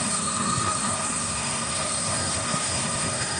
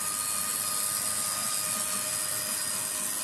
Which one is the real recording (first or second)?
second